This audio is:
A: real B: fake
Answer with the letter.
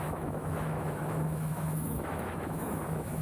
B